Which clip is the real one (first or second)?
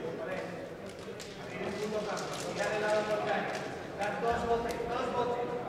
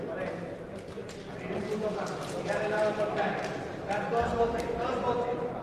first